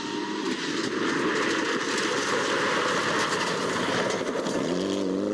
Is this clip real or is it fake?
real